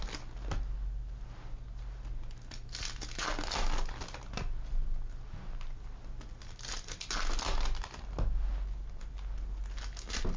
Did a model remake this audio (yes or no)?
no